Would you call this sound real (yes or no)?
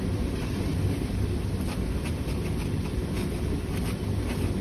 yes